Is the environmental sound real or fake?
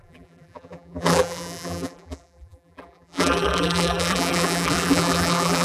fake